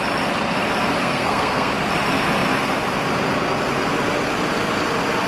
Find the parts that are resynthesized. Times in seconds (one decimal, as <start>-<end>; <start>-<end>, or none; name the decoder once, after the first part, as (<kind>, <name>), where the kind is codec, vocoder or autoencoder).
1.0-1.7 (codec, SNAC)